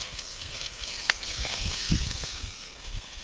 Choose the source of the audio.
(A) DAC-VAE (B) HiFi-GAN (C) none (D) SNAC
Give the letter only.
D